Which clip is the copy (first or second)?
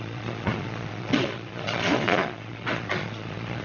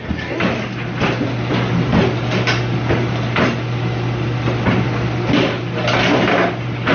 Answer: first